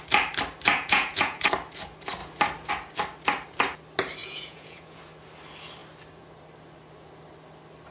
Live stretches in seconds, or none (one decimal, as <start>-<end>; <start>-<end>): 0.0-0.7; 1.5-4.2; 5.0-7.9